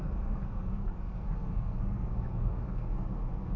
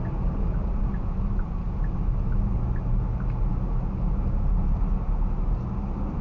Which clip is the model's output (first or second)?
first